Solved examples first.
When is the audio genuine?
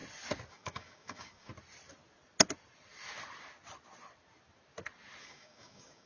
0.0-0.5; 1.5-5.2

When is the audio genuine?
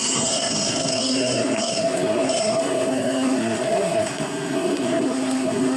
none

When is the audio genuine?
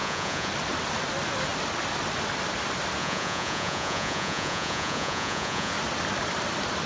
0.5-3.0; 5.7-6.9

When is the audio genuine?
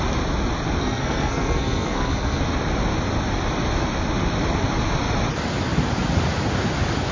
0.0-0.8; 2.4-7.1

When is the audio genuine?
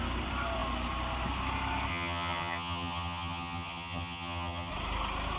0.0-1.9; 4.7-5.4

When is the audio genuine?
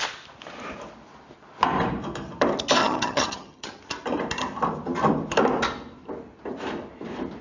0.0-2.8; 3.8-7.4